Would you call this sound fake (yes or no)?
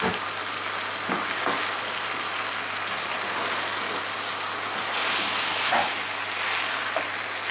no